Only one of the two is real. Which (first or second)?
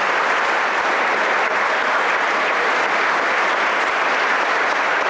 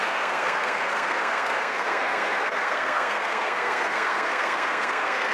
first